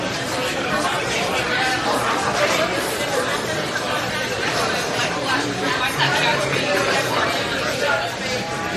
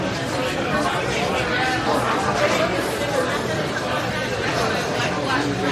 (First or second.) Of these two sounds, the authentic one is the second